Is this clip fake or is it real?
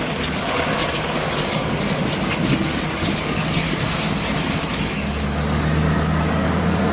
fake